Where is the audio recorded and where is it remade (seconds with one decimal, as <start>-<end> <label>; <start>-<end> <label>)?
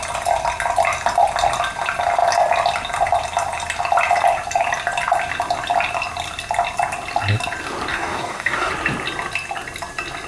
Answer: 0.0-7.9 recorded; 7.9-8.7 remade; 8.7-10.3 recorded